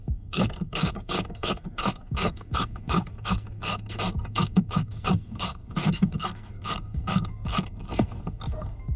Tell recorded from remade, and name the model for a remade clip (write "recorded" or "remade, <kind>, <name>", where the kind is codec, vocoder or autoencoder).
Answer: remade, codec, SNAC